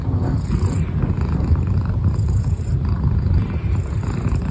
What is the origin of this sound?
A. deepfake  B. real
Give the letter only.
A